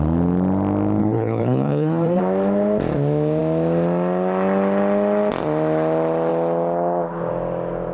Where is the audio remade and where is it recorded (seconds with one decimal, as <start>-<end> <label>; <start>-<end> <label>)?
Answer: 0.0-1.0 recorded; 1.0-2.2 remade; 2.2-7.9 recorded

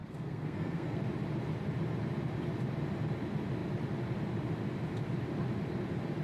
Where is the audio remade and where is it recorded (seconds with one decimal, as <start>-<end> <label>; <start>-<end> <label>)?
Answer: 0.0-1.0 remade; 1.0-6.2 recorded

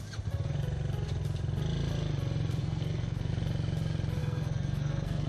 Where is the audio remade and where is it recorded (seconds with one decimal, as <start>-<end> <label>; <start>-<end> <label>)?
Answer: 0.0-2.6 recorded; 2.6-3.3 remade; 3.3-4.2 recorded; 4.2-5.3 remade

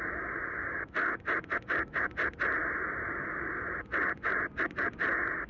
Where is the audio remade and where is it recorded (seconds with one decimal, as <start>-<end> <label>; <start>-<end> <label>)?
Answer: 0.0-5.5 recorded

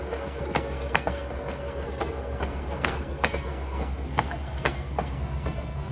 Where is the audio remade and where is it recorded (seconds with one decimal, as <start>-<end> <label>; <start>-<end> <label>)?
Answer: 0.0-5.9 remade

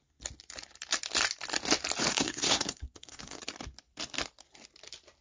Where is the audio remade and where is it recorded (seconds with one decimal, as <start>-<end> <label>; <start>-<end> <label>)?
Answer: 0.0-2.1 recorded; 2.1-3.4 remade; 3.4-5.2 recorded